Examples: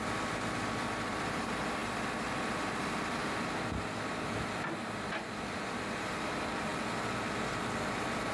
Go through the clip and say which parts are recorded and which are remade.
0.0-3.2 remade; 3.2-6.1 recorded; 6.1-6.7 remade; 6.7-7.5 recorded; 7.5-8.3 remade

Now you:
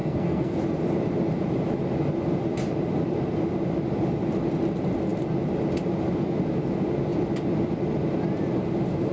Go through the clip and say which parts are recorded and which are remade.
0.0-0.6 remade; 0.6-9.1 recorded

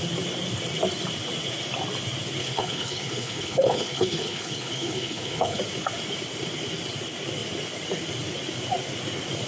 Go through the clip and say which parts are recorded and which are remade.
0.0-2.4 recorded; 2.4-5.6 remade; 5.6-9.5 recorded

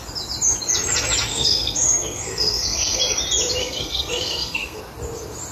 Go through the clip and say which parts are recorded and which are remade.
0.0-1.3 recorded; 1.3-3.0 remade; 3.0-3.6 recorded; 3.6-4.8 remade; 4.8-5.5 recorded

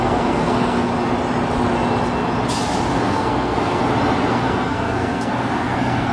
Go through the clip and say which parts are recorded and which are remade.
0.0-0.9 remade; 0.9-2.9 recorded; 2.9-3.8 remade; 3.8-4.3 recorded; 4.3-6.1 remade